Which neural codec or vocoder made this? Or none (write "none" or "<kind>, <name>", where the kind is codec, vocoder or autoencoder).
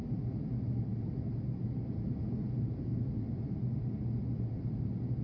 none